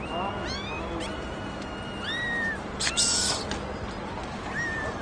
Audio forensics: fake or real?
real